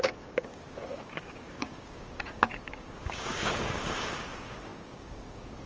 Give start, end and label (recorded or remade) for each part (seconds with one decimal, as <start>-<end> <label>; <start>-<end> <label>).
0.0-5.7 remade